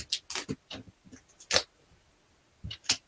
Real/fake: real